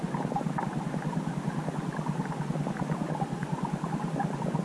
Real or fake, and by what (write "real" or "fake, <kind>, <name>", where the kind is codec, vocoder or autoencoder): real